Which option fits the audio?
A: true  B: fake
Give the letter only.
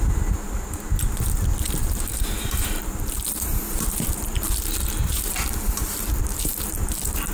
B